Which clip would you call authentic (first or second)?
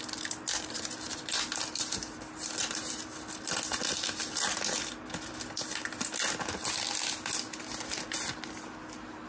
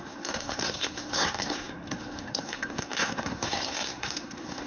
first